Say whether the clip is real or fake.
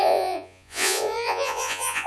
fake